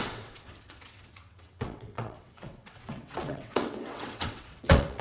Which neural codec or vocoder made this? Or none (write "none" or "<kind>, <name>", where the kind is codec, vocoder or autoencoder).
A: vocoder, WaveNeXt